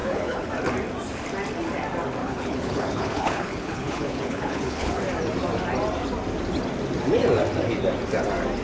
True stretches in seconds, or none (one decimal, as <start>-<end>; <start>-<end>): 0.5-2.2; 5.0-8.6